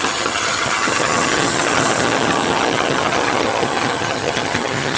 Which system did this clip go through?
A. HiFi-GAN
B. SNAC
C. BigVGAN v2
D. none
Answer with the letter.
A